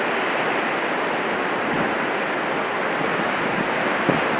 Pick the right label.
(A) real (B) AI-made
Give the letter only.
A